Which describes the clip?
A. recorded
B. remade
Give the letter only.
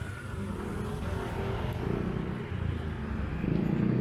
A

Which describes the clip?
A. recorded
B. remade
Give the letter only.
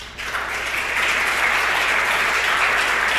A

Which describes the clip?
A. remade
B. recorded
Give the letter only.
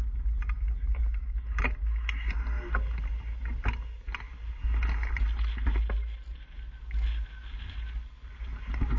B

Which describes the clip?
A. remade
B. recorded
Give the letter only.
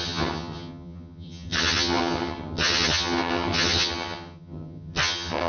A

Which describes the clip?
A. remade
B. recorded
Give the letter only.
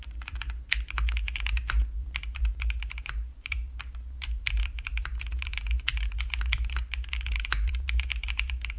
A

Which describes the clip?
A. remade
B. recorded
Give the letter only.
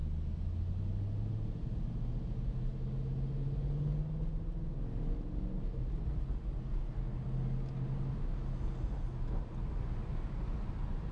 B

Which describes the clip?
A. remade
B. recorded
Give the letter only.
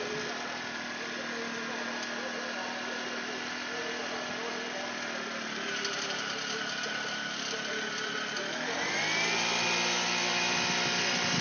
B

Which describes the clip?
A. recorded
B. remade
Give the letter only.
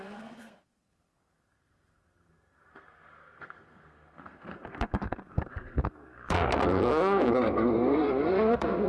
B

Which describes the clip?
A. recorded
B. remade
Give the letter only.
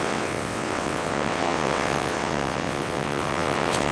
B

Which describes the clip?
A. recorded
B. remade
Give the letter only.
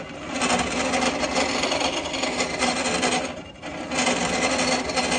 A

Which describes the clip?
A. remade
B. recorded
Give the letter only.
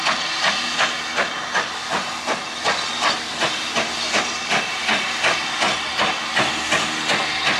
B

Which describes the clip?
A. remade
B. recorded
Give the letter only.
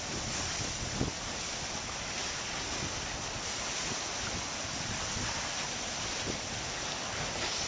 B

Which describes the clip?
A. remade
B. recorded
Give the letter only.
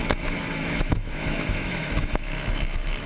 A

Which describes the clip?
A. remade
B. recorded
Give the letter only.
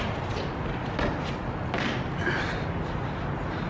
B